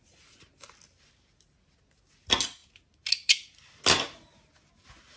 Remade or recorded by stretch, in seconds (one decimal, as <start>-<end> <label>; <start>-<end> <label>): 0.0-5.2 recorded